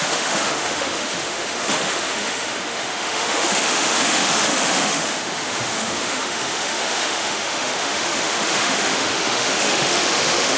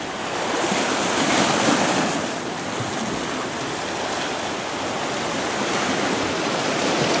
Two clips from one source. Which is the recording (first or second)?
second